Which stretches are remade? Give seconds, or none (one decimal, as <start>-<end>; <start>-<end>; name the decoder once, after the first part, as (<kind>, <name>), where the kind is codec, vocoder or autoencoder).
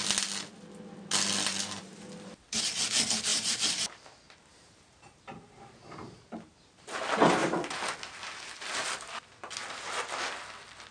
1.5-2.0 (vocoder, BigVGAN v2); 3.3-4.0; 4.5-7.0